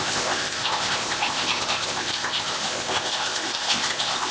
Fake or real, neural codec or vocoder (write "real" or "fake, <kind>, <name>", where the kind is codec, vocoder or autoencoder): fake, codec, ZipCodec